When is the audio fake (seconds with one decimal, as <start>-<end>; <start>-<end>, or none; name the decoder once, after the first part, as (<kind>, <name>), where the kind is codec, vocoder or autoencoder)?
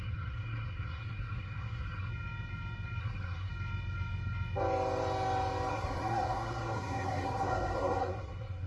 0.0-2.1 (codec, SNAC); 3.0-3.5; 5.7-8.7